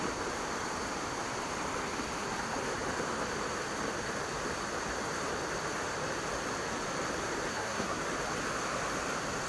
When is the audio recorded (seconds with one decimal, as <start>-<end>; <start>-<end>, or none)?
0.0-7.5; 8.0-9.5